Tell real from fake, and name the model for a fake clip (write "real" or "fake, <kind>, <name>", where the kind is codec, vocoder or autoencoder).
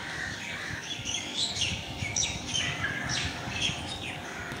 fake, codec, DAC